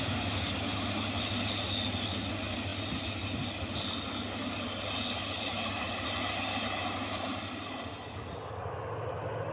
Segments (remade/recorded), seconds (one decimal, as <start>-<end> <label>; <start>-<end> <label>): 0.0-9.5 recorded